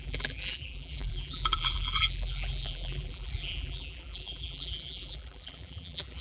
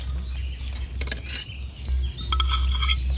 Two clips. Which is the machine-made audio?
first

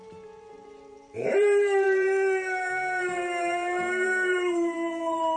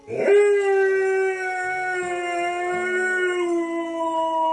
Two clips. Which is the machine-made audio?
first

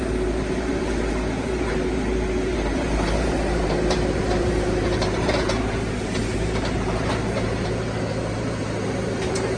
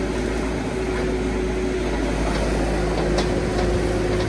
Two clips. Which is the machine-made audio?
first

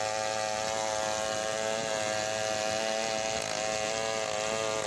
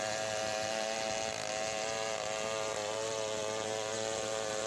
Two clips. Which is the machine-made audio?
second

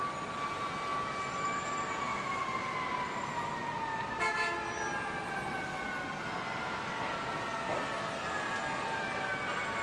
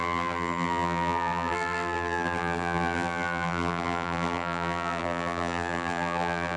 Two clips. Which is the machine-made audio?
second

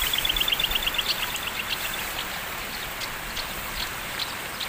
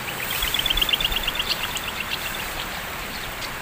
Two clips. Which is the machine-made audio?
second